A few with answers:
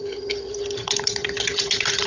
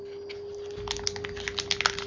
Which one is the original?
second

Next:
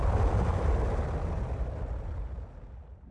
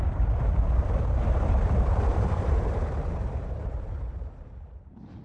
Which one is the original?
first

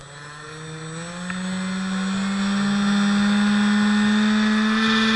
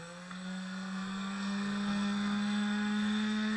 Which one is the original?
first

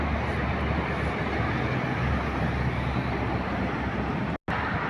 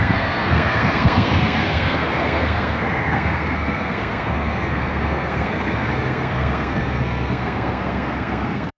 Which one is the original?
first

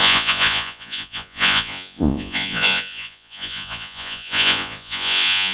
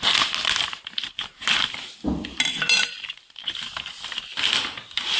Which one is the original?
second